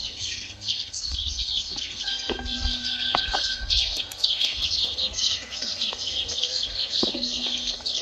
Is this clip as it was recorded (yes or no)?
no